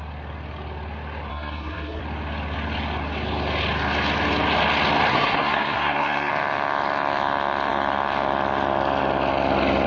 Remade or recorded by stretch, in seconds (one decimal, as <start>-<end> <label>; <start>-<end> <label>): 0.0-1.3 recorded; 1.3-2.0 remade; 2.0-5.1 recorded; 5.1-6.3 remade; 6.3-9.9 recorded